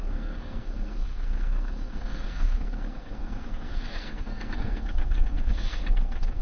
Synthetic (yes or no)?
yes